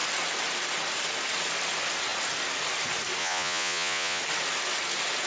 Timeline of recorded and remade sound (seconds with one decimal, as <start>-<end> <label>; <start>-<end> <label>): 0.0-3.2 recorded; 3.2-4.2 remade; 4.2-5.3 recorded